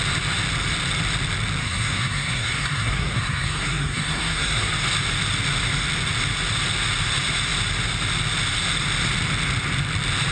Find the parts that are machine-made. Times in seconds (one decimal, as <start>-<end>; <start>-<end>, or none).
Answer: 1.6-4.7